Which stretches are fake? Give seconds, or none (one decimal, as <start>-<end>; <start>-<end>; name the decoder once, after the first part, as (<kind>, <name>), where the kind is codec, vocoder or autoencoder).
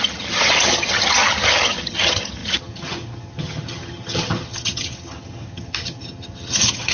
0.0-6.9 (vocoder, HiFi-GAN)